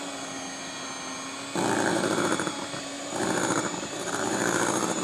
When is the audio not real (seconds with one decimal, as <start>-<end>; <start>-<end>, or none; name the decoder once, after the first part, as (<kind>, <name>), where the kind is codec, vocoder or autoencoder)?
1.9-5.0 (vocoder, BigVGAN v2)